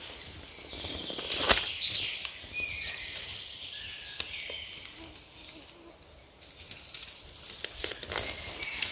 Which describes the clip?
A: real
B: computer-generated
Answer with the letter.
A